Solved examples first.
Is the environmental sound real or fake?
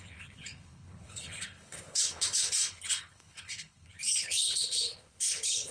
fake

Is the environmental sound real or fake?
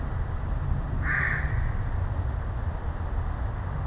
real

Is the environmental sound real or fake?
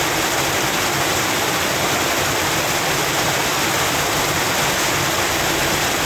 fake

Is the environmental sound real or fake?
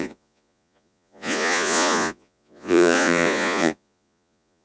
fake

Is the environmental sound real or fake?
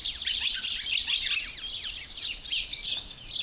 real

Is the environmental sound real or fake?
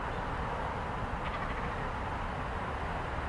real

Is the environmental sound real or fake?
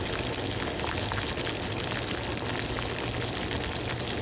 real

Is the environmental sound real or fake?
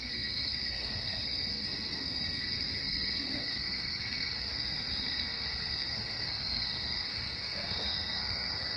fake